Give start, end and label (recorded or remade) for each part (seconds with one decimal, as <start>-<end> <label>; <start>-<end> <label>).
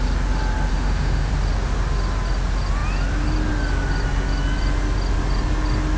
0.0-0.7 recorded; 0.7-1.3 remade; 1.3-6.0 recorded